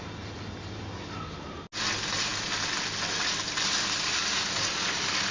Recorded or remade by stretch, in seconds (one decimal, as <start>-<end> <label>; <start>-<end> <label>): 0.0-5.3 recorded